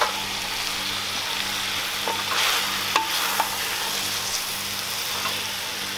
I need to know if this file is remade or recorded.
recorded